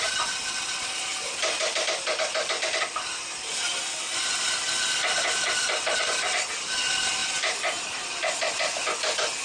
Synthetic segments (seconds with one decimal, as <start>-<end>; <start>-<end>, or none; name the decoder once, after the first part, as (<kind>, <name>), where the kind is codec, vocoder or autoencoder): none